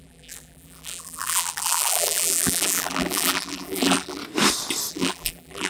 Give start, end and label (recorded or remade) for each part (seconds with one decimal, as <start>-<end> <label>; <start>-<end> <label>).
0.0-4.2 remade; 4.2-4.9 recorded; 4.9-5.7 remade